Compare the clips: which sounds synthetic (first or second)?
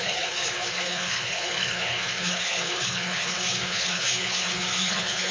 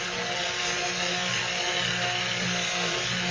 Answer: first